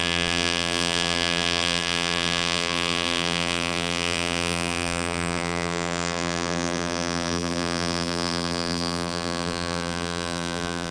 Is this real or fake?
fake